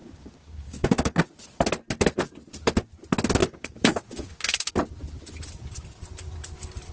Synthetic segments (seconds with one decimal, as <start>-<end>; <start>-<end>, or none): 0.0-1.3; 3.4-4.7